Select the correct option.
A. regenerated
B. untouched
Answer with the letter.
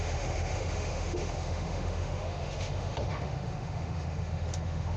A